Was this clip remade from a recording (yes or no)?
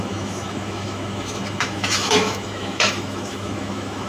yes